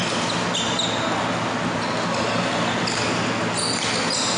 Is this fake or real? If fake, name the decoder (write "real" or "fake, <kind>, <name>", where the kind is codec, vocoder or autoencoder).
real